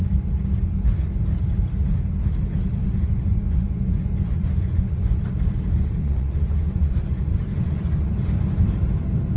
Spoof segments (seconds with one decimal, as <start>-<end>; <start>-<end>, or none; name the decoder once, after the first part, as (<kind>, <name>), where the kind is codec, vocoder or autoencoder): 2.8-5.2 (vocoder, Vocos); 6.0-7.0; 7.5-8.1